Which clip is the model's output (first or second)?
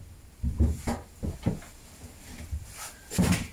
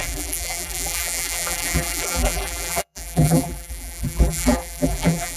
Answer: second